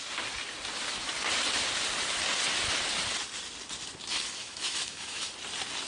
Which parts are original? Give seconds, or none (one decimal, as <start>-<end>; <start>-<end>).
0.0-4.4; 5.3-5.9